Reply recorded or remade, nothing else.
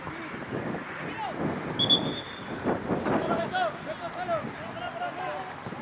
recorded